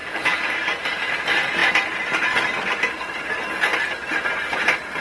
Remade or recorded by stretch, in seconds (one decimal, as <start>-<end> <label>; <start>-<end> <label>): 0.0-5.0 recorded